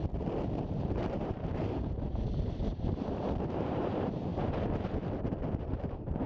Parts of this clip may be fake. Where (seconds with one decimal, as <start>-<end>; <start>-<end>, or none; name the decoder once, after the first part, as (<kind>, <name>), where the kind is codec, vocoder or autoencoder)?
0.6-4.3 (vocoder, BigVGAN v2); 5.5-6.3